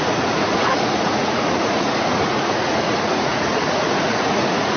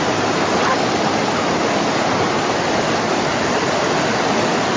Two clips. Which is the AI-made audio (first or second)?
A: first